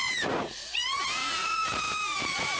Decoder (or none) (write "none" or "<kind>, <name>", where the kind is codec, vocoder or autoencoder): vocoder, Vocos